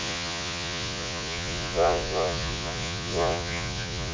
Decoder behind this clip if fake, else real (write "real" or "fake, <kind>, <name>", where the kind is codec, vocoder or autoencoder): fake, vocoder, Vocos